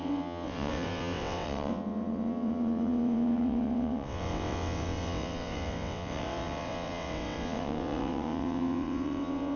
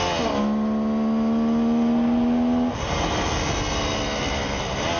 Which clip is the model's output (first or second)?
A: first